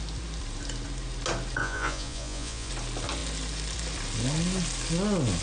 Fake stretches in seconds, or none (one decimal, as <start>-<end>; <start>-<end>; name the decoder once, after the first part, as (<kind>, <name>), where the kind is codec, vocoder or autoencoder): 1.6-2.7 (vocoder, Vocos)